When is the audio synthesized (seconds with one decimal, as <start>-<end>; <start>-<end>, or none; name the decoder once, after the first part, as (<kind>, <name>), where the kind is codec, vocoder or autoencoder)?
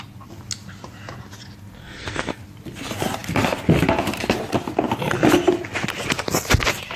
1.8-2.4 (codec, SNAC)